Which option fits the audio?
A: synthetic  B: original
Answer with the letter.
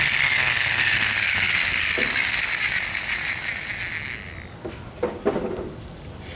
B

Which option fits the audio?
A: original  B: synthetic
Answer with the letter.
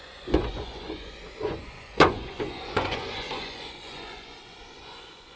B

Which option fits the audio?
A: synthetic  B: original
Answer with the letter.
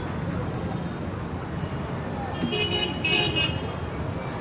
B